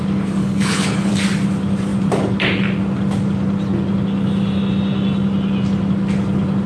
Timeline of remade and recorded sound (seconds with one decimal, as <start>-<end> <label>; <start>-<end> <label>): 0.0-0.4 recorded; 0.4-1.1 remade; 1.1-6.7 recorded